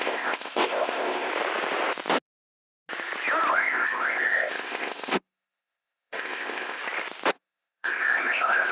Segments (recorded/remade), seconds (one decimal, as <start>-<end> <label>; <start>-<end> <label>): 0.0-1.3 remade; 1.3-3.5 recorded; 3.5-6.8 remade; 6.8-7.3 recorded; 7.3-8.7 remade

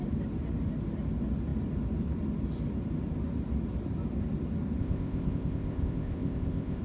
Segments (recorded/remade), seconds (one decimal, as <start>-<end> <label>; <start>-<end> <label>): 0.0-4.8 recorded; 4.8-6.8 remade

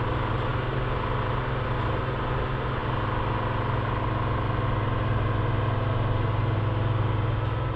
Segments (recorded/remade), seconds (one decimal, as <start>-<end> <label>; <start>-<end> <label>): 0.0-7.8 recorded